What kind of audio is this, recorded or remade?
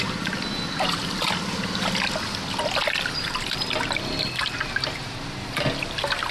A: recorded